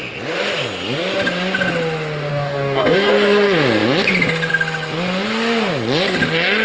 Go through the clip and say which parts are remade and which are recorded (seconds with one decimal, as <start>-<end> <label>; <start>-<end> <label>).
0.0-2.3 recorded; 2.3-3.1 remade; 3.1-6.6 recorded